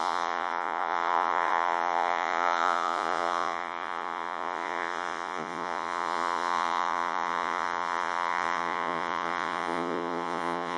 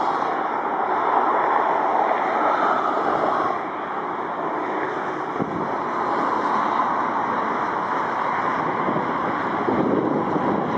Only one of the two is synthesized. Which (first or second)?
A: first